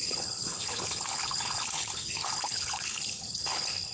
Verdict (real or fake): fake